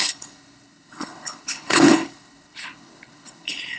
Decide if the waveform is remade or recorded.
remade